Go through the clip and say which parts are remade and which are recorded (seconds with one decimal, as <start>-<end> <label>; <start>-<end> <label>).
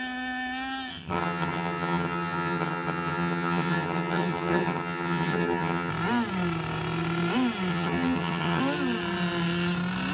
0.0-0.9 recorded; 0.9-5.9 remade; 5.9-7.7 recorded; 7.7-8.6 remade; 8.6-10.1 recorded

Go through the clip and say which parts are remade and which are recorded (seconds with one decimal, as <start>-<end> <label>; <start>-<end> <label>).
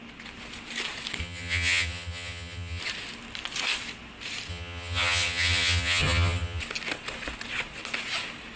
0.0-1.2 recorded; 1.2-2.8 remade; 2.8-4.5 recorded; 4.5-6.6 remade; 6.6-8.6 recorded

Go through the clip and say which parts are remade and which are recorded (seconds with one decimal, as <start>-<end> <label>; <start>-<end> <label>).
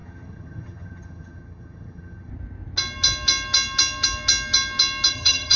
0.0-2.3 remade; 2.3-5.1 recorded; 5.1-5.6 remade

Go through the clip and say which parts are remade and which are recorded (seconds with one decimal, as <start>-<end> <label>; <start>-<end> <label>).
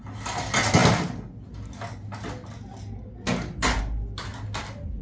0.0-5.0 recorded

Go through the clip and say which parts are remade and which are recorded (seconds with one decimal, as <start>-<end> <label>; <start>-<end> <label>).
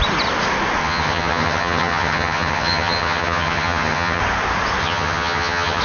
0.0-0.8 recorded; 0.8-4.2 remade; 4.2-4.8 recorded; 4.8-5.8 remade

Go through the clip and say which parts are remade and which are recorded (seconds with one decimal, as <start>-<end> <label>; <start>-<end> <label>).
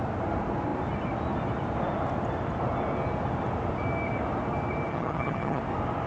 0.0-4.9 recorded; 4.9-5.6 remade; 5.6-6.1 recorded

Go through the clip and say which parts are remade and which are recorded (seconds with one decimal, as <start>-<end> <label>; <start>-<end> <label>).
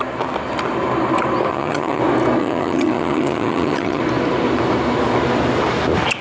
0.0-1.5 recorded; 1.5-2.0 remade; 2.0-2.4 recorded; 2.4-4.0 remade; 4.0-6.2 recorded